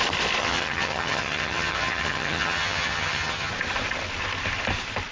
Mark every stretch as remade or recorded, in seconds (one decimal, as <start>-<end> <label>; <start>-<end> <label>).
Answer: 0.0-0.4 recorded; 0.4-3.5 remade; 3.5-5.1 recorded